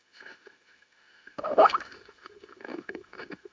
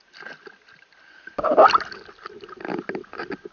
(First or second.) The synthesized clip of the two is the first